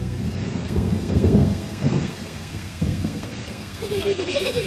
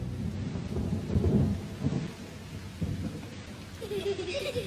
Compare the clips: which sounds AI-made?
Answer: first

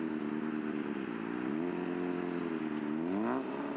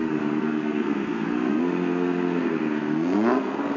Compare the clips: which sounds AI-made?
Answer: second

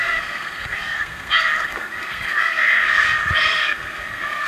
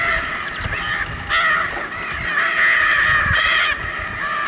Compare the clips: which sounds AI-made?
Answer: first